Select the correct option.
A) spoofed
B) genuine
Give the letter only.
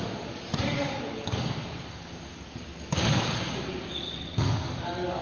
A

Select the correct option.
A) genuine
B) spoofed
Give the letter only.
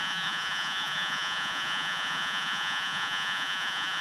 B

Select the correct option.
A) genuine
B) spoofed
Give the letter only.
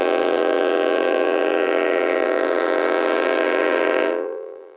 B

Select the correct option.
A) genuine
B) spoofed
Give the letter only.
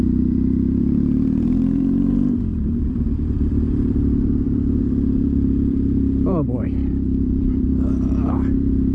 B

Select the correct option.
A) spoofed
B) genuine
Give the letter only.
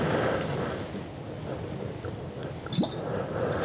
B